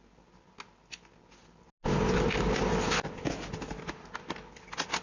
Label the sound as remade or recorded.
recorded